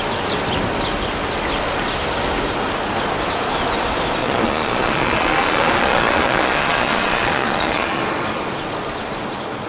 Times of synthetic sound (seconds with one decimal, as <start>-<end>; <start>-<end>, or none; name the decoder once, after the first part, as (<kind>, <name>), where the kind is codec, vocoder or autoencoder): 4.2-8.0 (vocoder, Vocos)